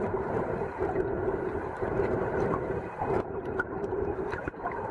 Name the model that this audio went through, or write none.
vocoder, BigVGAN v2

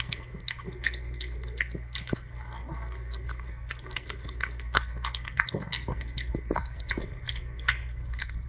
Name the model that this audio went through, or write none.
codec, SNAC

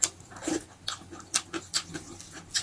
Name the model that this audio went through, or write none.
none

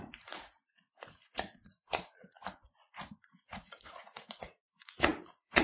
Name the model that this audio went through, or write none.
vocoder, Vocos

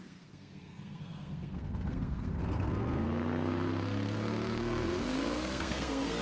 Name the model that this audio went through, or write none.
codec, SNAC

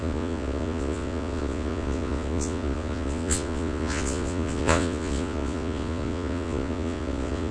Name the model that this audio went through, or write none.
vocoder, Vocos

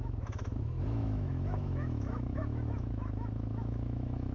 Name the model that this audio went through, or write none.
autoencoder, DAC-VAE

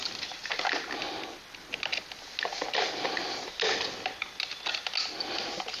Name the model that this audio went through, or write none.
none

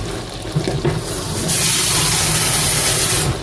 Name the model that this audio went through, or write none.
none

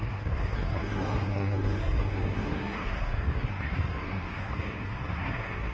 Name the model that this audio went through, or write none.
codec, SNAC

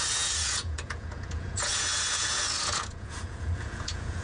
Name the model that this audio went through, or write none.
vocoder, Vocos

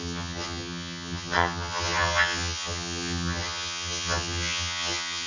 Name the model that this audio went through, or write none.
vocoder, HiFi-GAN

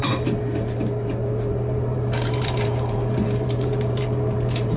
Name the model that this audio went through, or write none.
vocoder, BigVGAN v2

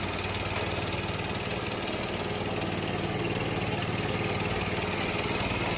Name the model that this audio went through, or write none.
none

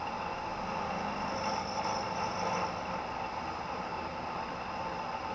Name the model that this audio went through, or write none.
none